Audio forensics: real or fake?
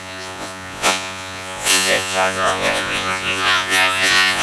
fake